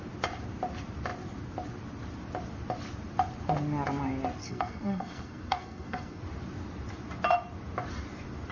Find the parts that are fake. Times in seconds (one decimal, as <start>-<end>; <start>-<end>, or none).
4.4-6.2